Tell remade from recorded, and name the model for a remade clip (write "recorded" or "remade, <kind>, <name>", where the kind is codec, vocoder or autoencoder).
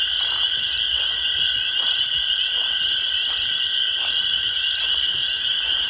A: recorded